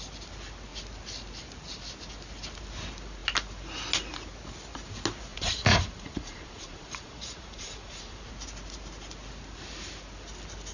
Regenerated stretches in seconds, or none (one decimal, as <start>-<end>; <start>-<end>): 5.3-8.3

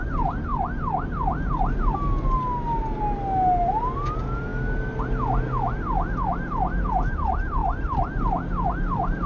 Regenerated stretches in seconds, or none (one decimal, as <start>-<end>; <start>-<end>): none

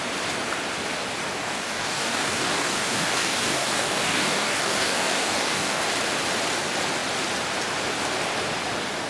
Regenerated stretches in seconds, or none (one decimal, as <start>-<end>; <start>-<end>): 1.3-5.8

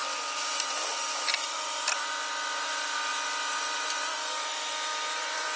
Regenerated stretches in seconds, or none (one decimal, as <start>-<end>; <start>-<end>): 0.0-1.1; 3.1-4.5; 4.9-5.6